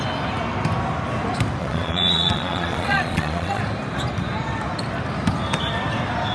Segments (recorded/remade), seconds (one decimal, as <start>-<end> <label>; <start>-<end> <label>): 0.0-1.6 recorded; 1.6-3.6 remade; 3.6-6.3 recorded